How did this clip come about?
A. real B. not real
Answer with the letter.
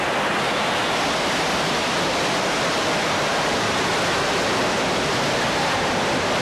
A